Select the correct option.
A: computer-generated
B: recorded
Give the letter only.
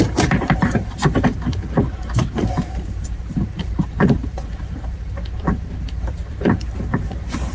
A